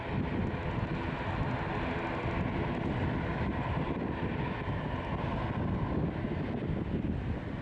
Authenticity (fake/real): real